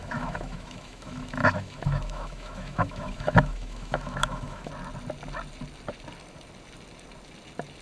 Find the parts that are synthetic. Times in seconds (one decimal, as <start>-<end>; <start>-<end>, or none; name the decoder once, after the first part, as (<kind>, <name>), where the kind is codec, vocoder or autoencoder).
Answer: 0.0-4.7 (autoencoder, DAC-VAE)